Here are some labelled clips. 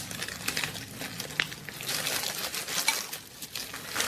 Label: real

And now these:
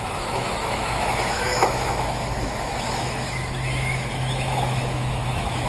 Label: fake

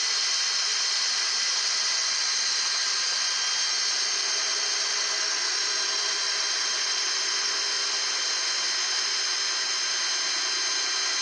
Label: real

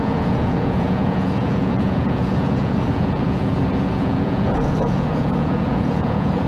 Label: fake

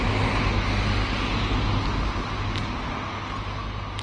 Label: real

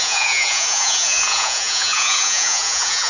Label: fake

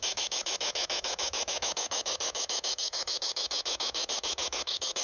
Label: fake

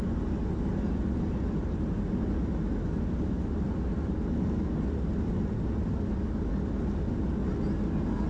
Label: real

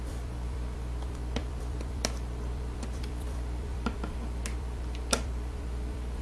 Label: fake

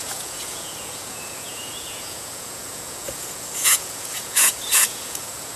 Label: fake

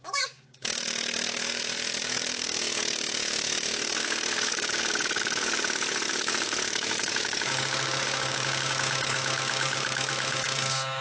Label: fake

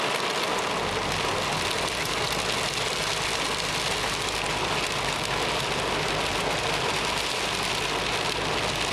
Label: real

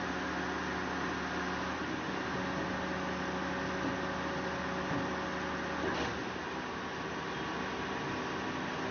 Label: real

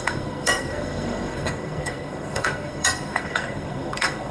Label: fake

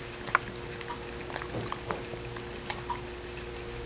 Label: real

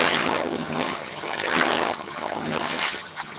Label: fake